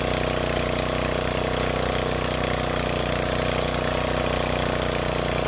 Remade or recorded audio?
recorded